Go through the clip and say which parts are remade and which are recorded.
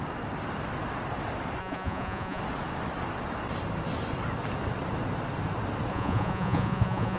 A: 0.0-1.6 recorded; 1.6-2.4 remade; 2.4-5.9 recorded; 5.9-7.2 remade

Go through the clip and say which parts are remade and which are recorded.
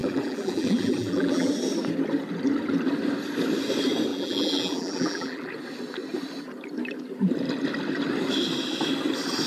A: 0.0-1.5 remade; 1.5-4.1 recorded; 4.1-5.5 remade; 5.5-9.5 recorded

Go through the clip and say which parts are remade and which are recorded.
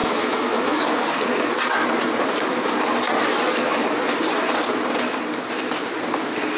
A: 0.0-0.8 remade; 0.8-6.6 recorded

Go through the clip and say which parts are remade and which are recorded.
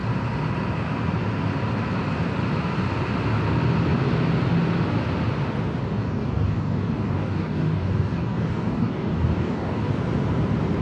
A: 0.0-5.8 recorded; 5.8-9.9 remade; 9.9-10.8 recorded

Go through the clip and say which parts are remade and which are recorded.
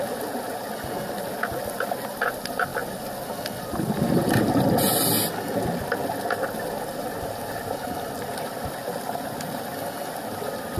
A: 0.0-10.8 recorded